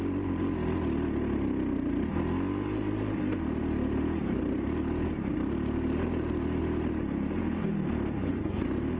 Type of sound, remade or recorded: recorded